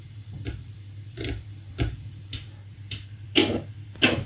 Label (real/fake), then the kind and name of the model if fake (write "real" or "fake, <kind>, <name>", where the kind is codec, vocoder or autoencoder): fake, vocoder, BigVGAN v2